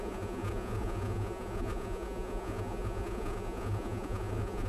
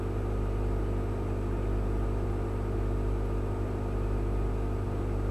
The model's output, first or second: first